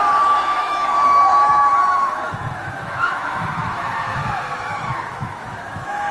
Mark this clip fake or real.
fake